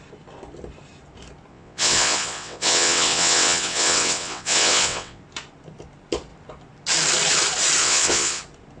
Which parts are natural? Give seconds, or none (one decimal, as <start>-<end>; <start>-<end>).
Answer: 0.0-1.5; 5.2-7.8; 8.4-8.8